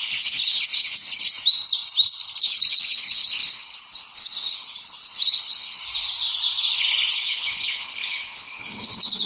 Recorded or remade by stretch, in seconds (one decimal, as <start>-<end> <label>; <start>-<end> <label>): 0.0-1.4 remade; 1.4-2.4 recorded; 2.4-5.8 remade; 5.8-7.1 recorded; 7.1-9.3 remade